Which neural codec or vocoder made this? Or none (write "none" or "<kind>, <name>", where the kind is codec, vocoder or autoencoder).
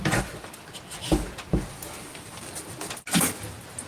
none